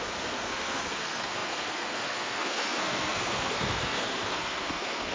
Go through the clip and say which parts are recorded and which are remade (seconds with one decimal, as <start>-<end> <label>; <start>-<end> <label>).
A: 0.0-5.1 remade

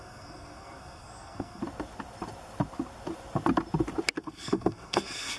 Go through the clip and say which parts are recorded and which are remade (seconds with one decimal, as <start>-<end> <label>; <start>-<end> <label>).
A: 0.0-1.6 remade; 1.6-4.2 recorded; 4.2-5.4 remade

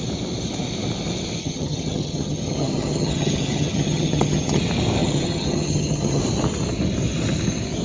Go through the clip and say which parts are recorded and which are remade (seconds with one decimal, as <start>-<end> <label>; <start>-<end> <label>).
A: 0.0-1.4 recorded; 1.4-4.6 remade; 4.6-5.0 recorded; 5.0-6.2 remade; 6.2-7.8 recorded

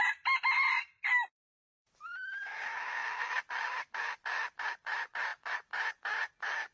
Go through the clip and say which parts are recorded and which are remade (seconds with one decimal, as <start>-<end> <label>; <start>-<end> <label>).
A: 0.0-3.0 recorded; 3.0-3.6 remade; 3.6-6.7 recorded

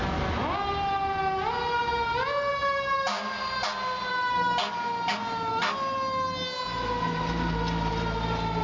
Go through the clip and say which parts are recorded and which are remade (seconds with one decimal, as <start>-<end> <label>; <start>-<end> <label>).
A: 0.0-8.6 recorded

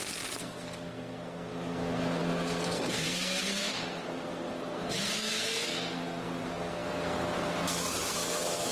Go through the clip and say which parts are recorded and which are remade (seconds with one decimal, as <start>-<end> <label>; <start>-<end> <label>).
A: 0.0-8.7 remade

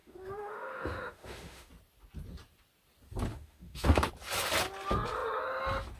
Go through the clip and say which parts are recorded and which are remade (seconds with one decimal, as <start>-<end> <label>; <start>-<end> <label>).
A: 0.0-1.7 remade; 1.7-3.3 recorded; 3.3-4.1 remade; 4.1-6.0 recorded

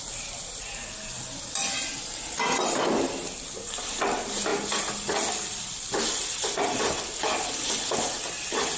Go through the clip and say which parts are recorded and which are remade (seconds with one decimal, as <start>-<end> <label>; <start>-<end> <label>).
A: 0.0-8.8 recorded